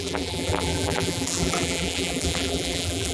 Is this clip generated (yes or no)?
yes